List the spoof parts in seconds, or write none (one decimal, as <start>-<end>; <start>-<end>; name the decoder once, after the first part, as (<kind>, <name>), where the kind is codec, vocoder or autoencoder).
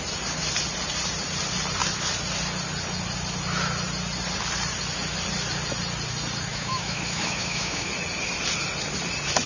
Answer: 6.5-7.9 (autoencoder, DAC-VAE)